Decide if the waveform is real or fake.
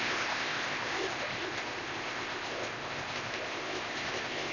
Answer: fake